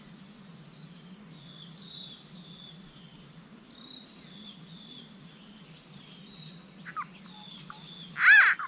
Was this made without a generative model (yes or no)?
yes